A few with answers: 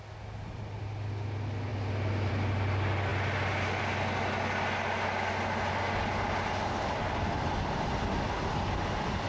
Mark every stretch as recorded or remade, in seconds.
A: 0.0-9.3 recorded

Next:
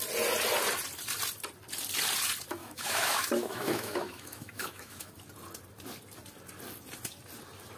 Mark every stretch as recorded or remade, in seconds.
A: 0.0-2.6 recorded; 2.6-5.1 remade; 5.1-7.8 recorded

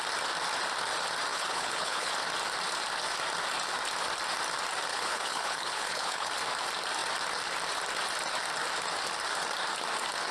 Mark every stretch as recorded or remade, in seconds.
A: 0.0-1.3 recorded; 1.3-2.1 remade; 2.1-4.9 recorded; 4.9-6.3 remade; 6.3-10.3 recorded

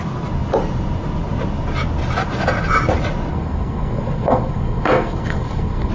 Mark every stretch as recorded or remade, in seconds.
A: 0.0-3.3 recorded; 3.3-5.9 remade

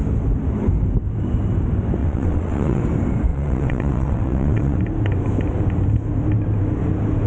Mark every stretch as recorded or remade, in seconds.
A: 0.0-2.0 recorded; 2.0-2.8 remade; 2.8-3.3 recorded; 3.3-4.8 remade; 4.8-7.3 recorded

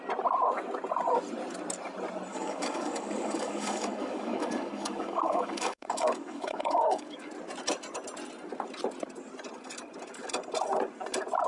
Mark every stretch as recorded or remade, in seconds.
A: 0.0-2.3 recorded; 2.3-7.3 remade; 7.3-11.5 recorded

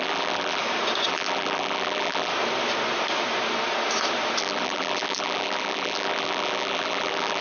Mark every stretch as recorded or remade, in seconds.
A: 0.0-0.6 remade; 0.6-1.1 recorded; 1.1-2.3 remade; 2.3-4.4 recorded; 4.4-7.4 remade